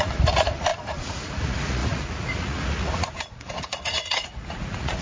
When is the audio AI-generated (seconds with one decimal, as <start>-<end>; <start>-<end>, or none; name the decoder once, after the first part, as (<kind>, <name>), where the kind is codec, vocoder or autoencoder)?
0.0-5.0 (vocoder, Vocos)